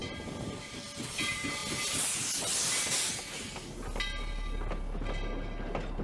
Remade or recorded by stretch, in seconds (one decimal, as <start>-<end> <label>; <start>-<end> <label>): 0.0-1.6 recorded; 1.6-3.2 remade; 3.2-6.0 recorded